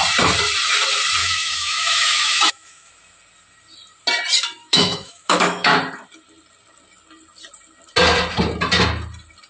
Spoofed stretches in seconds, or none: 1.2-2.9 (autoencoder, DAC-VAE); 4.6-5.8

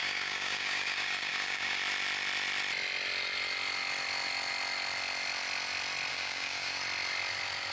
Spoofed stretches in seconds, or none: 0.0-1.8 (codec, DAC); 6.1-6.8

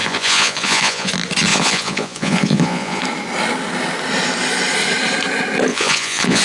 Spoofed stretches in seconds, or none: 0.0-1.1 (vocoder, Vocos); 1.5-3.0; 5.7-6.4

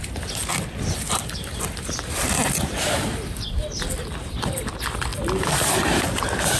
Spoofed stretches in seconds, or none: 0.5-2.1 (vocoder, BigVGAN v2); 5.1-5.7